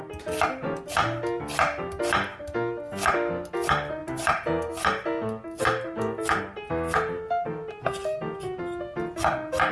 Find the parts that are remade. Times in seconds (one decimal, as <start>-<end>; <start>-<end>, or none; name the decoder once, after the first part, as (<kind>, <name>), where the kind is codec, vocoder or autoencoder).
none